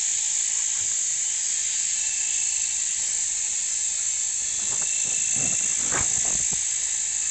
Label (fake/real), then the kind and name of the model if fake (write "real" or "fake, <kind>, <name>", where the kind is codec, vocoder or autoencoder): real